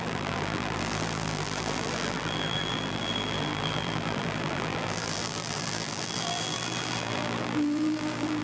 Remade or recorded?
remade